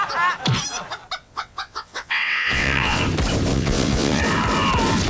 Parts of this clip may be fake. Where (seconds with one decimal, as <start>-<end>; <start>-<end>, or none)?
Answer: 1.2-3.0; 3.5-4.2